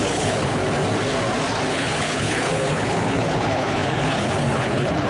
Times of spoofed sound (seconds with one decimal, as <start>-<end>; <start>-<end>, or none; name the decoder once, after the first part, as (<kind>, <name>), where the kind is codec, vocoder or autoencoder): 0.0-0.6 (codec, HILCodec); 1.7-5.1